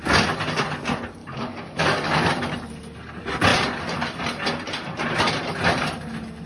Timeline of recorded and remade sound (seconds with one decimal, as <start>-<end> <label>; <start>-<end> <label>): 0.0-1.2 recorded; 1.2-2.3 remade; 2.3-6.5 recorded